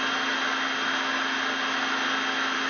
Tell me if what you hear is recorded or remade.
recorded